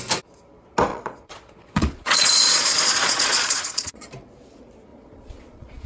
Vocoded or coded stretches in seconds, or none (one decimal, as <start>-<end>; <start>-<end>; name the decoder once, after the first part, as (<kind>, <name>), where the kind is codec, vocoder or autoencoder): 0.9-4.1 (vocoder, Vocos); 4.9-5.9